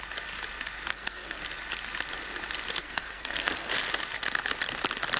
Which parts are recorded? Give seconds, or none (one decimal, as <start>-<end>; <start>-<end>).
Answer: 0.0-0.9; 1.4-2.8; 3.7-5.2